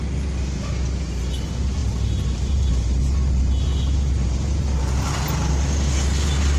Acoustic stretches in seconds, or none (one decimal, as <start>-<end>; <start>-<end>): 0.0-6.6